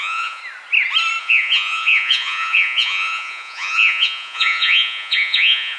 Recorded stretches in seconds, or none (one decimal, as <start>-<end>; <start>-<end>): 0.4-1.2